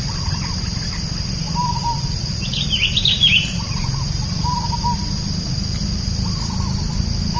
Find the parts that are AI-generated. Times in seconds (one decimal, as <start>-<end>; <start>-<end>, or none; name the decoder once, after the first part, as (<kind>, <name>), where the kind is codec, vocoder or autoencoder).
1.6-4.4 (vocoder, BigVGAN v2)